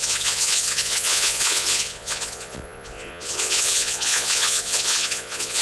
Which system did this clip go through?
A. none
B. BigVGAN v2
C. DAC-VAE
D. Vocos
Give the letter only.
D